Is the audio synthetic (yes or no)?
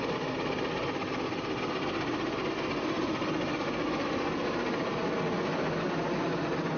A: no